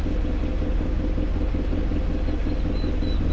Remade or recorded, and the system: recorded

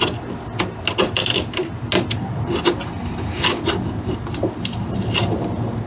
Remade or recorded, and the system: recorded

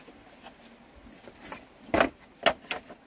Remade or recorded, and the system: recorded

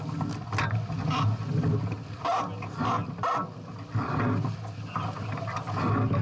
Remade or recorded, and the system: recorded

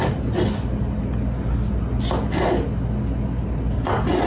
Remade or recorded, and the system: recorded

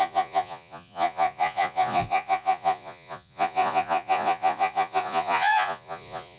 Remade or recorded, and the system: remade, vocoder, Vocos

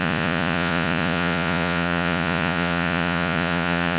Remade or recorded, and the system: remade, vocoder, Vocos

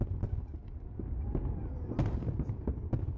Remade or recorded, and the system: recorded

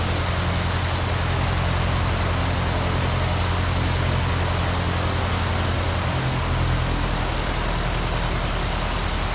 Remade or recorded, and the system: recorded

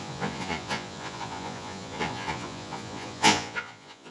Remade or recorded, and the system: remade, vocoder, Vocos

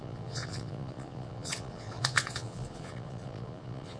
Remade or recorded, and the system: remade, vocoder, Vocos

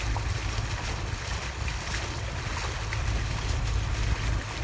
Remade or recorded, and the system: recorded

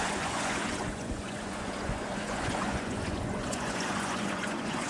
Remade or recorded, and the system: remade, vocoder, Vocos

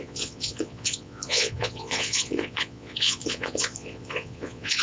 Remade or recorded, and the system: remade, vocoder, Vocos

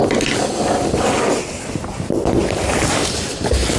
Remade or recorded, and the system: recorded